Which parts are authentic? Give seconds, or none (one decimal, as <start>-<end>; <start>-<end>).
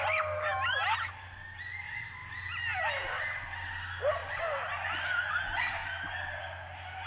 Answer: 0.0-7.1